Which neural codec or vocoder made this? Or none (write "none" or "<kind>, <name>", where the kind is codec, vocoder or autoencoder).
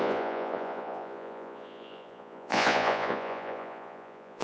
vocoder, Vocos